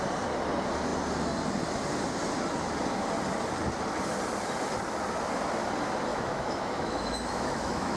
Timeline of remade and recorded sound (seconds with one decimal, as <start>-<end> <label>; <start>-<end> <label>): 0.0-6.1 recorded; 6.1-8.0 remade